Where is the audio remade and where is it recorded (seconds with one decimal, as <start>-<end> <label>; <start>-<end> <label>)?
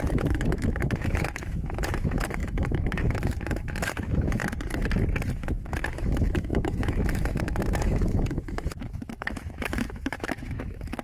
0.0-4.4 remade; 4.4-5.3 recorded; 5.3-11.0 remade